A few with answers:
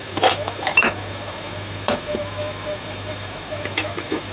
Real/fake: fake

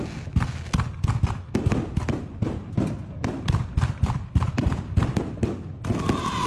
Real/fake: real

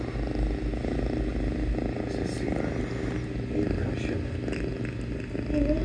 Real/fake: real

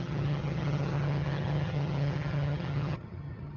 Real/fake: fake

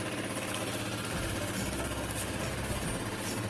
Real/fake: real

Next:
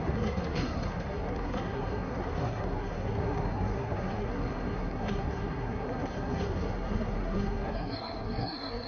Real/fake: fake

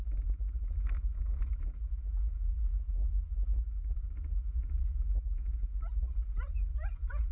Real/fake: real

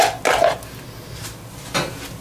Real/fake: real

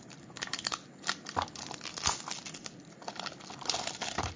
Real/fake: real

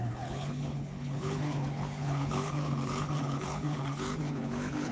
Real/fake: fake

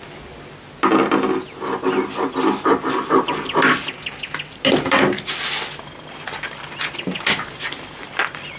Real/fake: real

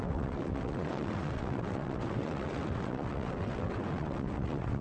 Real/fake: fake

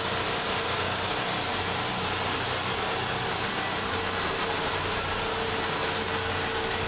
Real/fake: real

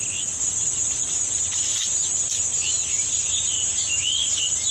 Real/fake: real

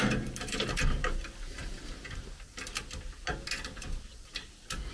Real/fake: real